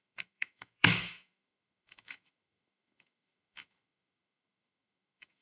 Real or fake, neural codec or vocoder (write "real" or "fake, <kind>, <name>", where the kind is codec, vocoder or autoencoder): fake, autoencoder, DAC-VAE